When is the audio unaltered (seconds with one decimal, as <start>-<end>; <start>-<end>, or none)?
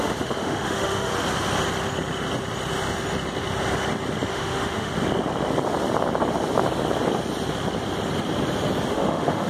1.1-4.3; 4.9-8.9